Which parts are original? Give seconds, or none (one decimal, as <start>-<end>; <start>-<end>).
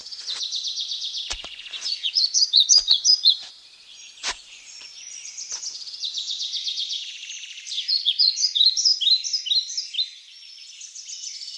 7.2-7.9; 8.9-10.0